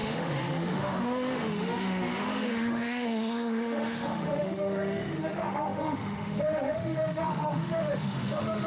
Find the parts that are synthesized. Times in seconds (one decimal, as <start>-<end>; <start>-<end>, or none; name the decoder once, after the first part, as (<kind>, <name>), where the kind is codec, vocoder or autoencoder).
0.0-8.7 (autoencoder, DAC-VAE)